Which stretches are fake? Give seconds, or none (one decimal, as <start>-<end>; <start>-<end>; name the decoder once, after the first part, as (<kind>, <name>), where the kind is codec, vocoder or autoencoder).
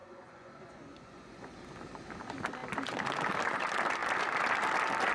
0.0-1.5 (vocoder, Vocos)